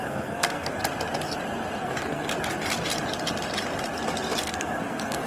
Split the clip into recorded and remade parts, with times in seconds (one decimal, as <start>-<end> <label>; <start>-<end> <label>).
0.0-0.8 remade; 0.8-1.8 recorded; 1.8-2.3 remade; 2.3-4.4 recorded; 4.4-5.3 remade